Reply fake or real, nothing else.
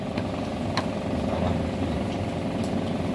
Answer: real